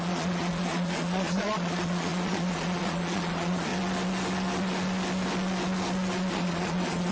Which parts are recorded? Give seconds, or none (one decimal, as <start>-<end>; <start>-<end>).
3.7-6.3